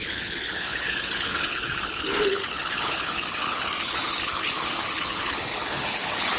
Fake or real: fake